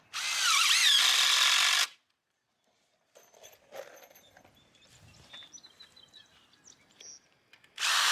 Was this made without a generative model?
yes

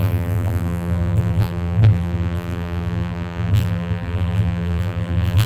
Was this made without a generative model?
no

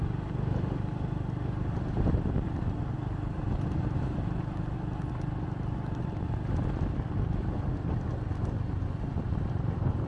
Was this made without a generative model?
yes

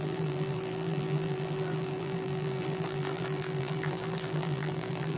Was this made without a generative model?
no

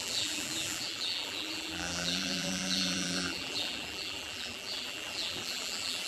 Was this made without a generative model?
no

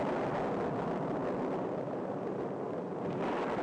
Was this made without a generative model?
yes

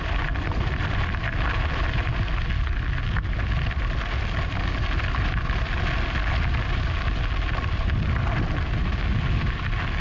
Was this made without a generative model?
yes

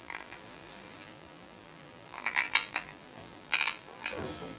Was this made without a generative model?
no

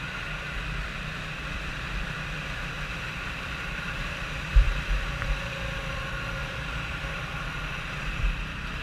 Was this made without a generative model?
no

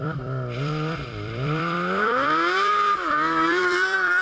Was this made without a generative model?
no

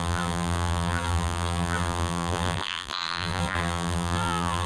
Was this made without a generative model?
no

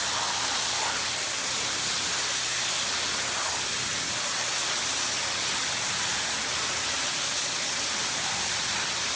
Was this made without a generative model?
yes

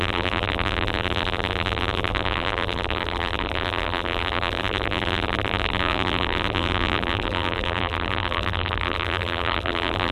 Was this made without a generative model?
no